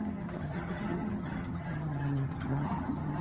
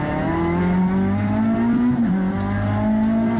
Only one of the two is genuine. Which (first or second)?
second